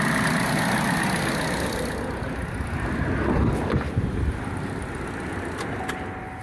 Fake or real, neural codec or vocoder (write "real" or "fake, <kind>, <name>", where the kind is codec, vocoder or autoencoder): real